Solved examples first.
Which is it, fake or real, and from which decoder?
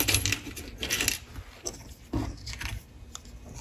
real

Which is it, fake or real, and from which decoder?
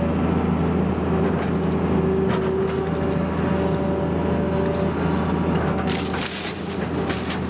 real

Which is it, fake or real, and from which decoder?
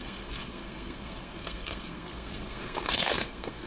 fake, codec, SNAC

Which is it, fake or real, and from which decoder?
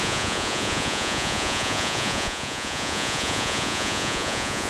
fake, vocoder, Vocos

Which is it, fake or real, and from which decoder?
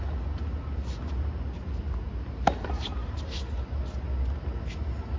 real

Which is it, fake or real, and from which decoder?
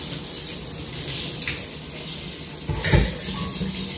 real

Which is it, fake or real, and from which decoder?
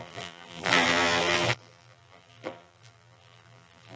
fake, vocoder, BigVGAN v2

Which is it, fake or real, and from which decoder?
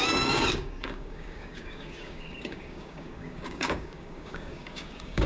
fake, codec, DAC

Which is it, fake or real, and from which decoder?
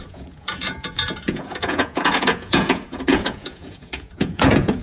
fake, vocoder, Vocos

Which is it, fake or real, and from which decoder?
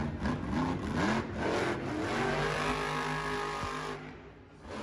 real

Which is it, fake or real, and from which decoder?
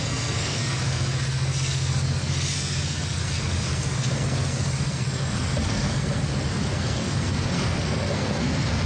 fake, codec, SNAC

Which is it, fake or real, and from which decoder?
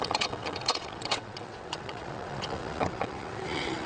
fake, vocoder, WaveNeXt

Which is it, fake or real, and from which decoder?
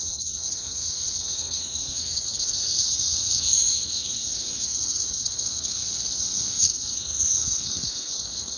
fake, codec, SNAC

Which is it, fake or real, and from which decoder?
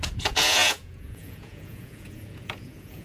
fake, vocoder, Vocos